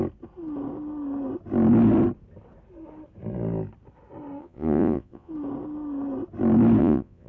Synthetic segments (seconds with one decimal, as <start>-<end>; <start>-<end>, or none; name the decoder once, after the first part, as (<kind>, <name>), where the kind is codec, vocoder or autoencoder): 4.4-5.3 (vocoder, Vocos); 6.8-7.3